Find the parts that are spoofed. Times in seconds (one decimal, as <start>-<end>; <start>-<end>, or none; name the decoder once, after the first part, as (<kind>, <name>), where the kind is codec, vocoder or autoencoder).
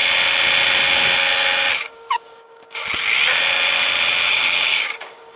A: 1.8-2.8 (codec, DAC); 4.3-5.4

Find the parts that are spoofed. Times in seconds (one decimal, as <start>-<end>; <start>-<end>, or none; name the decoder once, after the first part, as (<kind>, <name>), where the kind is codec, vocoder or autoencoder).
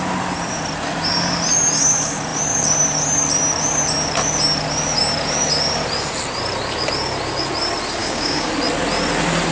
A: 8.0-8.5 (codec, DAC)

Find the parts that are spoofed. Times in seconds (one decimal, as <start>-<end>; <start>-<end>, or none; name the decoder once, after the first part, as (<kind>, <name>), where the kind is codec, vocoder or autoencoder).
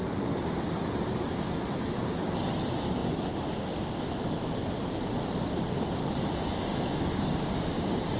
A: 6.7-8.2 (codec, DAC)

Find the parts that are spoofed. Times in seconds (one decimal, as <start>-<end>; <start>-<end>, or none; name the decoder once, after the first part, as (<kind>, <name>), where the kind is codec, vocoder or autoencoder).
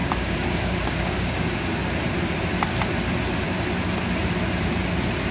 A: 0.0-1.9 (codec, DAC)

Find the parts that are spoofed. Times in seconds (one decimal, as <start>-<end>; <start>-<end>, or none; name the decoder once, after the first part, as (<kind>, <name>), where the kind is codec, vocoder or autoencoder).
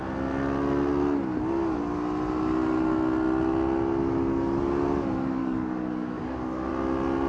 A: 5.4-6.7 (codec, DAC)